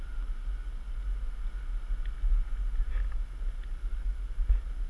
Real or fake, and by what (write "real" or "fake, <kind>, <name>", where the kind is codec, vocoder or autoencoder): real